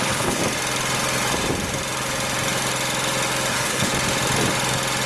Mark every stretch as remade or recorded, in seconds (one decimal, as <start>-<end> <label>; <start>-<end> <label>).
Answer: 0.0-0.4 remade; 0.4-3.5 recorded; 3.5-3.9 remade; 3.9-5.1 recorded